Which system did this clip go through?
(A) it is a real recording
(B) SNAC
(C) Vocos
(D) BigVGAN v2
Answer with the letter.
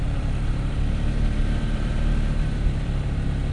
D